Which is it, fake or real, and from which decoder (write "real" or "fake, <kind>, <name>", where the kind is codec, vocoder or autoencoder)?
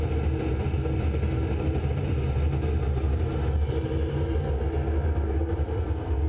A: real